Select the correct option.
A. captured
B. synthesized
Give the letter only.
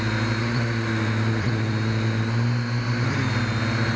A